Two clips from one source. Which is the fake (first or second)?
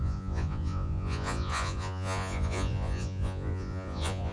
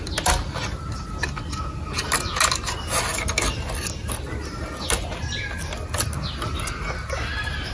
first